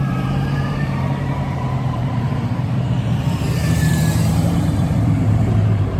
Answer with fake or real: fake